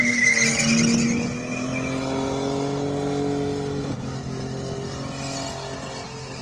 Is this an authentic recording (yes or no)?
yes